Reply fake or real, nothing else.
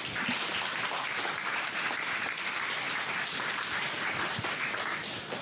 real